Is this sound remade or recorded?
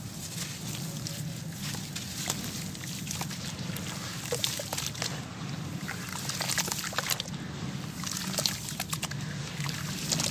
recorded